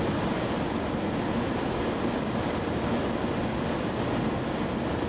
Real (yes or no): yes